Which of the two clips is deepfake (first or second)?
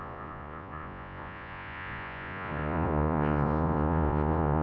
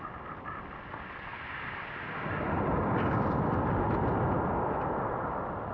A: first